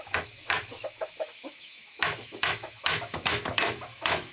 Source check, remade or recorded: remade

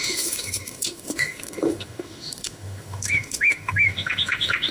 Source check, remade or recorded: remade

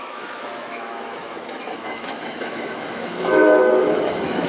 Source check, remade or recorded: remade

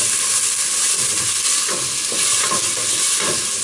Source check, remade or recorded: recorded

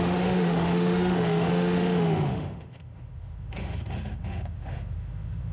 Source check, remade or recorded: remade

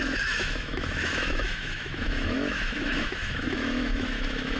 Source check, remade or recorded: remade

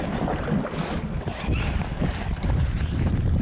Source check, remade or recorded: recorded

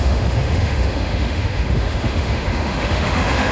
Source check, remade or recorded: remade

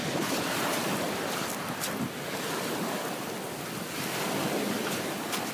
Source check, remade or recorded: recorded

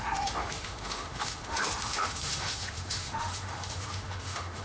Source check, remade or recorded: remade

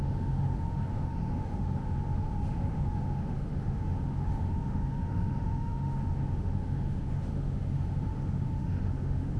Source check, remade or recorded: remade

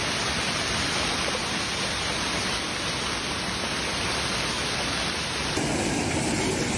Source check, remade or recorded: recorded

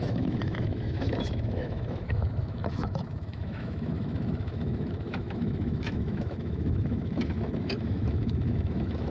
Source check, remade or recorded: remade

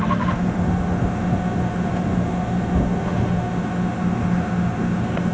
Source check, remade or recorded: remade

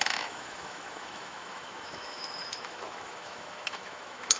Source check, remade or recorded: remade